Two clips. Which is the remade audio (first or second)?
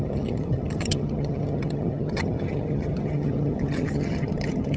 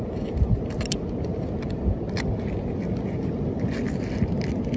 first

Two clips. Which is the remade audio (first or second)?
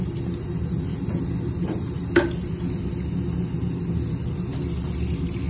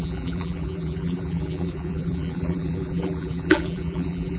second